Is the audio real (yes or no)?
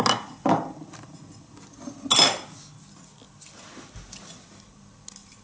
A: yes